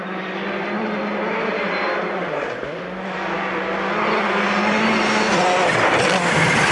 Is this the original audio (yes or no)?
yes